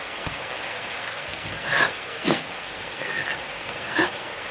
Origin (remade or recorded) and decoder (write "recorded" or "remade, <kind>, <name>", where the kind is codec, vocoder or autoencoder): remade, codec, SNAC